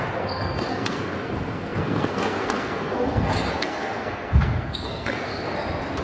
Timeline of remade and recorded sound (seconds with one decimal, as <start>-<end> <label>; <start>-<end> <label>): 0.0-5.3 remade; 5.3-6.0 recorded